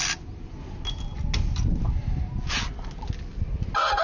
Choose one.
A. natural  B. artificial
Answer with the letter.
A